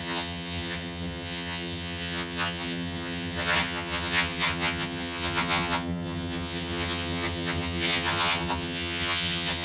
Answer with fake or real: fake